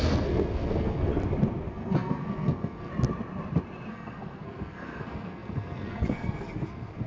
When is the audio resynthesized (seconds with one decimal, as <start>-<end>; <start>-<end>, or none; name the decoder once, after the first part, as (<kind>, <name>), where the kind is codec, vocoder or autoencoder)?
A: 0.0-1.1 (codec, SNAC); 1.7-2.9; 3.9-7.1